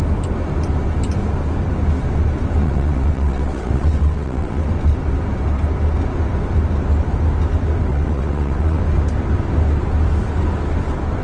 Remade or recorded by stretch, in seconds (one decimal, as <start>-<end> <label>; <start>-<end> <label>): 0.0-2.6 recorded; 2.6-4.7 remade; 4.7-7.9 recorded; 7.9-8.8 remade; 8.8-11.2 recorded